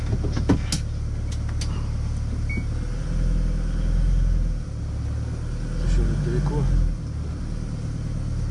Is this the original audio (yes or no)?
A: yes